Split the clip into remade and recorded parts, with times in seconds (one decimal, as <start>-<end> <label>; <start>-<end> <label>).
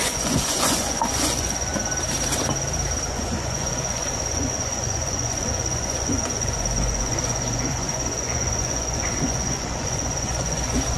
0.0-1.7 remade; 1.7-3.1 recorded; 3.1-11.0 remade